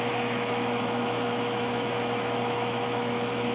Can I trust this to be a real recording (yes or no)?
no